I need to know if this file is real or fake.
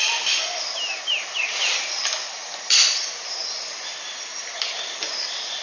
real